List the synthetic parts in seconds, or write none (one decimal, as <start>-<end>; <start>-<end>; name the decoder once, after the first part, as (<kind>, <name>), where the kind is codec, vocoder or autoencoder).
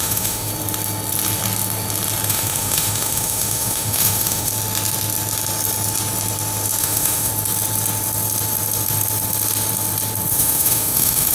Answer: 0.0-0.5 (autoencoder, DAC-VAE); 2.3-4.5; 6.8-7.3; 10.3-11.3